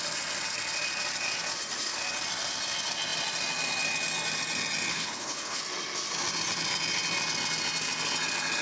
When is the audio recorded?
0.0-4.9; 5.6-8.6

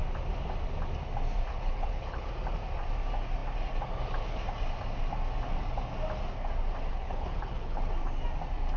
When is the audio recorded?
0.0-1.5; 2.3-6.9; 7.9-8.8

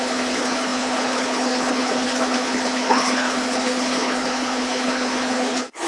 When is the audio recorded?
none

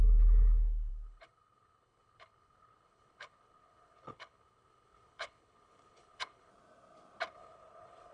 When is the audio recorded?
6.5-7.3